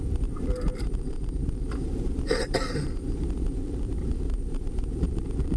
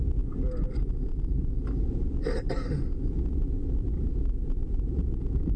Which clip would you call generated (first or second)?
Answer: first